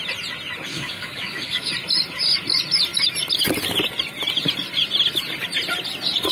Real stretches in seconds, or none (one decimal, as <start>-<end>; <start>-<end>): 0.0-0.7; 1.7-6.3